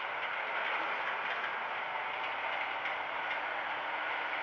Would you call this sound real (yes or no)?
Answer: yes